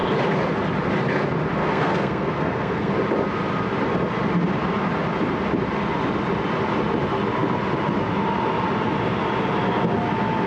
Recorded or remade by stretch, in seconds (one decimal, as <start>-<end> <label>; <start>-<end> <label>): 0.0-1.6 recorded; 1.6-2.9 remade; 2.9-10.5 recorded